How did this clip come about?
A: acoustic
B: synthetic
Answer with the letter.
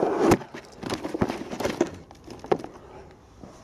A